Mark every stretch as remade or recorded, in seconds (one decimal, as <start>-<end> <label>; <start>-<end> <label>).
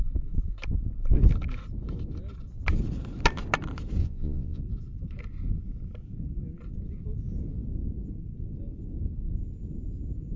0.0-4.0 recorded; 4.0-4.6 remade; 4.6-10.4 recorded